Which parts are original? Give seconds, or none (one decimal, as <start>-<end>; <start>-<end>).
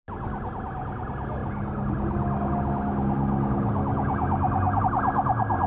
0.0-5.7